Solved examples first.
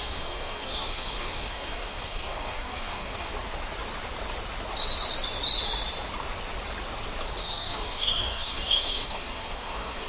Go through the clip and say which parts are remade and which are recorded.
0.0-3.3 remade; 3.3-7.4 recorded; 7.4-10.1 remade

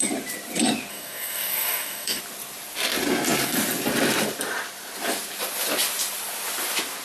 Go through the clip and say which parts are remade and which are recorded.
0.0-0.9 recorded; 0.9-2.2 remade; 2.2-7.0 recorded

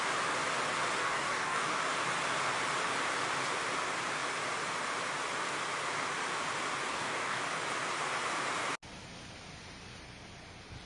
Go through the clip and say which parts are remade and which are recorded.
0.0-1.0 recorded; 1.0-1.8 remade; 1.8-6.9 recorded; 6.9-7.4 remade; 7.4-10.9 recorded

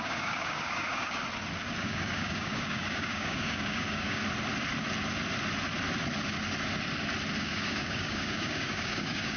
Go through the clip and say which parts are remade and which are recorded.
0.0-1.2 remade; 1.2-1.8 recorded; 1.8-4.2 remade; 4.2-7.4 recorded; 7.4-9.4 remade

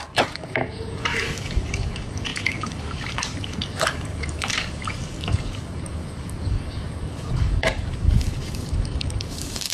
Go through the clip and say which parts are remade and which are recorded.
0.0-9.7 remade

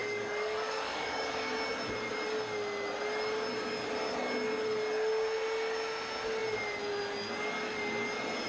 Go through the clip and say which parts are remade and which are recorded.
0.0-1.5 remade; 1.5-8.5 recorded

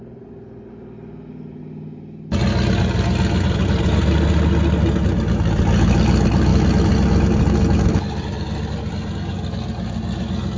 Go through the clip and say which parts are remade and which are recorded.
0.0-10.6 recorded